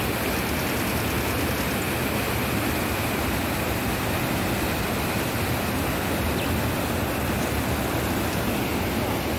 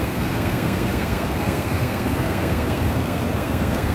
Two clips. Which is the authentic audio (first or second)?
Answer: first